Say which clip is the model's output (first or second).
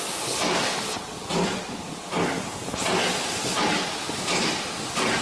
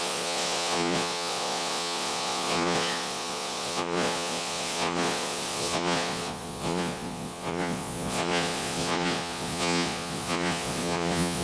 second